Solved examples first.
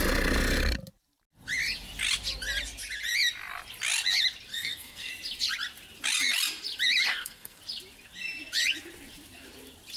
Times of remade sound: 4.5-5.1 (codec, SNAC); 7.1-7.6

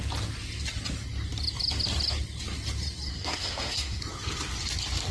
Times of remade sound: 3.1-4.0 (codec, SNAC)

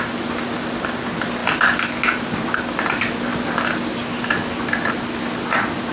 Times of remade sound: none

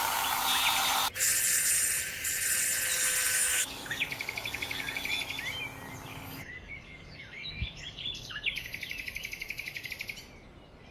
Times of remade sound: 3.3-5.1 (codec, DAC); 6.1-9.9

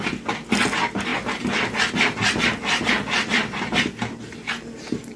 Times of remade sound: none